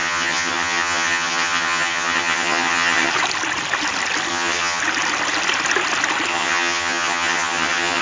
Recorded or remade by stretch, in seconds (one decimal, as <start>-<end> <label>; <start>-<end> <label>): 0.0-3.1 remade; 3.1-4.3 recorded; 4.3-4.8 remade; 4.8-6.3 recorded; 6.3-8.0 remade

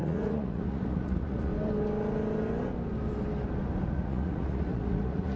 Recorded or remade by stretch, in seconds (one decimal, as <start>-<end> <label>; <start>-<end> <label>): 0.0-1.5 remade; 1.5-3.9 recorded; 3.9-5.4 remade

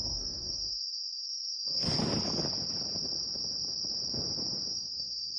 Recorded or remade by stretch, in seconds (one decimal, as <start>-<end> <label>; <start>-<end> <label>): 0.0-2.0 remade; 2.0-4.7 recorded; 4.7-5.4 remade

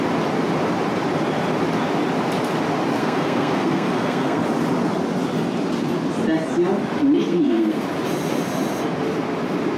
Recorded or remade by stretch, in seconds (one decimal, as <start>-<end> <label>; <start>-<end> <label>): 0.0-3.0 recorded; 3.0-4.4 remade; 4.4-7.2 recorded; 7.2-7.8 remade; 7.8-9.8 recorded